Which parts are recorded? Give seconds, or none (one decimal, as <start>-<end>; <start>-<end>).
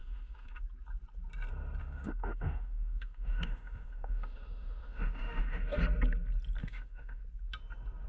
0.6-1.8; 5.8-6.6; 7.2-8.1